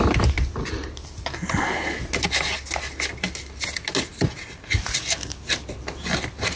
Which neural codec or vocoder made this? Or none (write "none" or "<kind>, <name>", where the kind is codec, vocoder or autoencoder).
none